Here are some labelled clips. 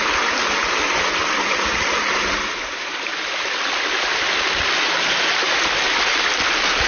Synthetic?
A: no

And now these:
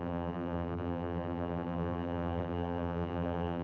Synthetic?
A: yes